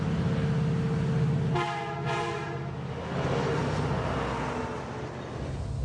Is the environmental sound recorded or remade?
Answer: recorded